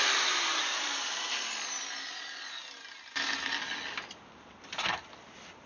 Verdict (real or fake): real